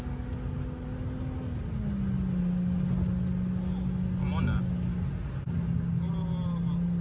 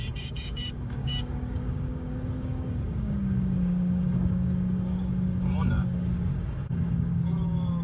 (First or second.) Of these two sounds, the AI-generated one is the second